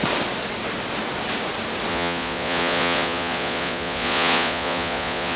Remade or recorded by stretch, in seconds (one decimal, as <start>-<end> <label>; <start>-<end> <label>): 0.0-1.9 recorded; 1.9-5.4 remade